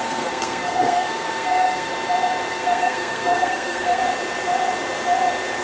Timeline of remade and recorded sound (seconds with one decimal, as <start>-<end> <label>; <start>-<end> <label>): 0.0-1.9 remade; 1.9-2.5 recorded; 2.5-4.0 remade; 4.0-5.6 recorded